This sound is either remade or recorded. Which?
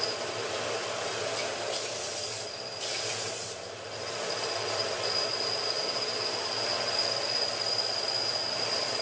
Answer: recorded